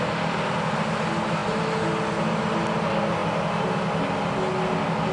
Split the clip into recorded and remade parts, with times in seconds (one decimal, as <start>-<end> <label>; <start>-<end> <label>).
0.0-5.1 recorded